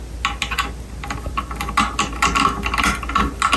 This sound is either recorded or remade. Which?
recorded